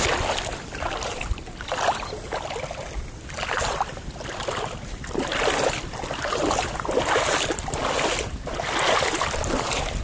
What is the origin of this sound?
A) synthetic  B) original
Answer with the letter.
B